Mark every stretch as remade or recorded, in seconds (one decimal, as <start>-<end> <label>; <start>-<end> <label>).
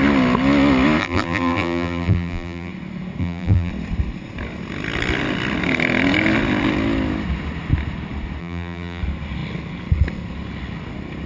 0.0-1.0 recorded; 1.0-2.7 remade; 2.7-3.2 recorded; 3.2-3.7 remade; 3.7-8.4 recorded; 8.4-9.0 remade; 9.0-11.3 recorded